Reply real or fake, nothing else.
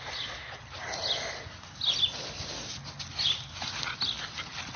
real